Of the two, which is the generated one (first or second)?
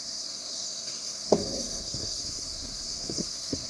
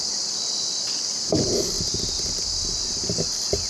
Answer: first